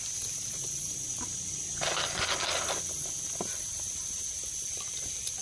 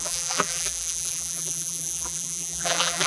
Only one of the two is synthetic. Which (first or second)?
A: second